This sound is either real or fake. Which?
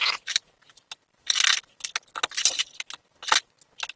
real